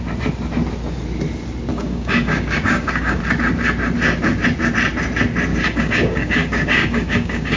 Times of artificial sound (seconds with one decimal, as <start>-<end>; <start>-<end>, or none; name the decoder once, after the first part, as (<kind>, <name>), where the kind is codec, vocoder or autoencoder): 1.7-3.2 (codec, DAC); 5.5-7.6